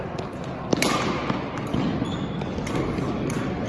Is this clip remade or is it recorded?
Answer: recorded